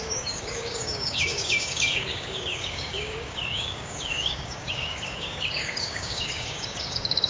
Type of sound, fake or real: fake